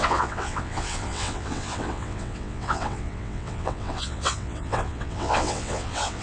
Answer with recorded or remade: remade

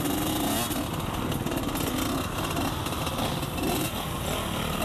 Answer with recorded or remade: recorded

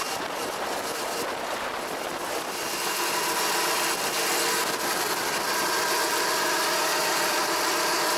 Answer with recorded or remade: remade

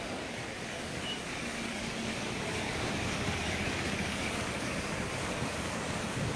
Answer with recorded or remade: remade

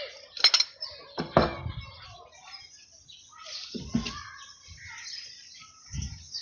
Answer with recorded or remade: recorded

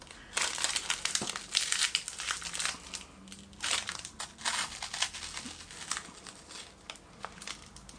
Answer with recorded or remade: recorded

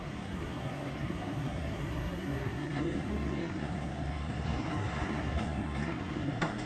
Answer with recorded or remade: remade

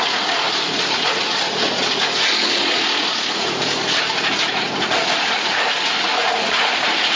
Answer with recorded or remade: remade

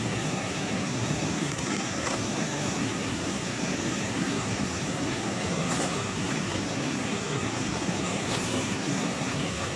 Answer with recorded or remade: remade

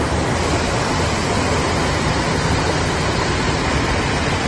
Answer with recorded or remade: recorded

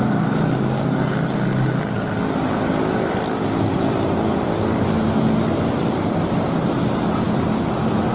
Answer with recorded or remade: recorded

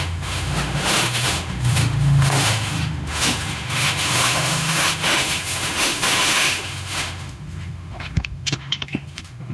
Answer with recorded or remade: remade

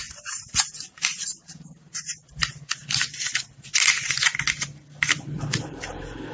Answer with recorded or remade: recorded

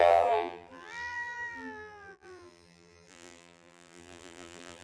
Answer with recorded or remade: remade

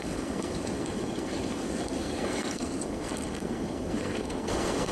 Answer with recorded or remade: remade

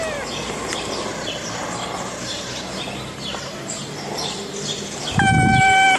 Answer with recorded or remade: recorded